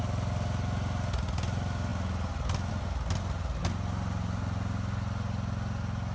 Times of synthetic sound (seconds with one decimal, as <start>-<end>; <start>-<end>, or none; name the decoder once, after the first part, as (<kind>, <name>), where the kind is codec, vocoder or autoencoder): none